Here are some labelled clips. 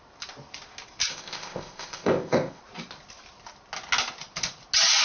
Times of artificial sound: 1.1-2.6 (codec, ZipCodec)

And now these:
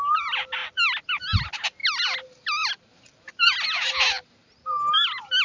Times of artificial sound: none

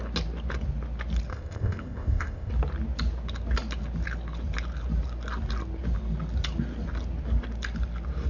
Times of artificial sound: 1.3-2.5 (codec, ZipCodec)

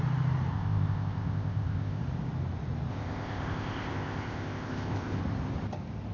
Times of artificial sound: 0.5-2.0 (codec, ZipCodec); 2.9-5.2